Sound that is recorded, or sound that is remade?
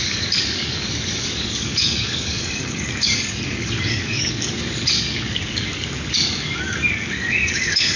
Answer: remade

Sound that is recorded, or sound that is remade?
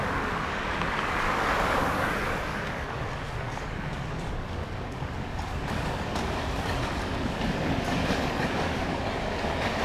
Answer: remade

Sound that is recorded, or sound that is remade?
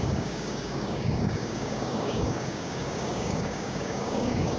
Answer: remade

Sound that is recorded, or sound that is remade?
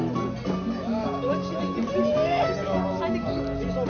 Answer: recorded